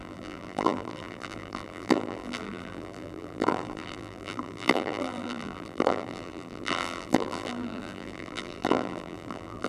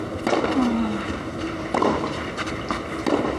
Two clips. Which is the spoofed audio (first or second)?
first